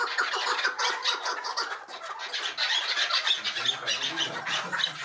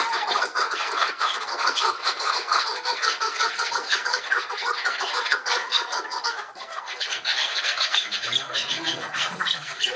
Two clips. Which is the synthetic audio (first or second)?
second